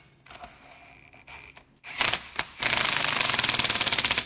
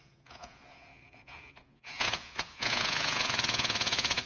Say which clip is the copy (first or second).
second